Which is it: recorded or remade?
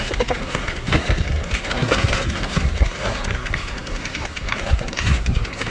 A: remade